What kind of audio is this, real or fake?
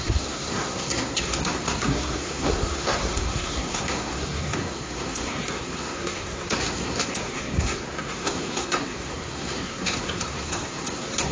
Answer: fake